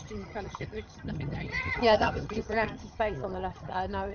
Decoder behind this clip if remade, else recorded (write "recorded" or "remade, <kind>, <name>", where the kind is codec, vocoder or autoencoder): remade, vocoder, HiFi-GAN